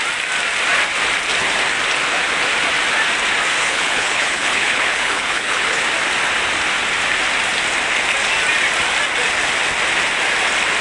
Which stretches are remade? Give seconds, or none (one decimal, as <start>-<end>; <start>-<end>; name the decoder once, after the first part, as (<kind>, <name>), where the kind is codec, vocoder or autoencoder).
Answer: 3.6-5.8 (codec, HILCodec)